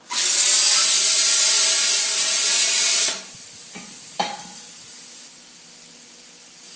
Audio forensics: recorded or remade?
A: recorded